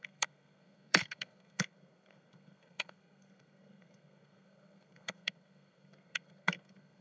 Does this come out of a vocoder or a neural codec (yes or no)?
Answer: yes